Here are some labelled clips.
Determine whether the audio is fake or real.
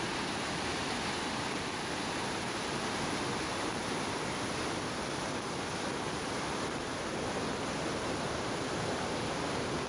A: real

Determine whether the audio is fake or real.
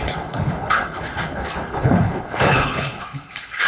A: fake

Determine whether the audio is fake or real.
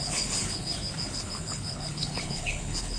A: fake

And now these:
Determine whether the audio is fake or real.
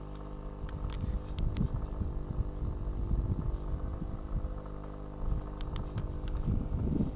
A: real